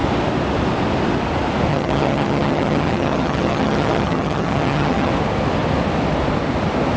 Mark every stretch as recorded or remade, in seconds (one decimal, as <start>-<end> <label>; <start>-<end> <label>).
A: 0.0-1.7 recorded; 1.7-5.1 remade; 5.1-7.0 recorded